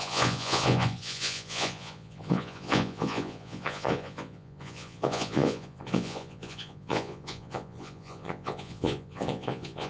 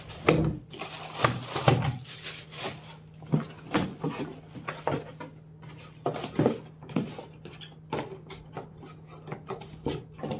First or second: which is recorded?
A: second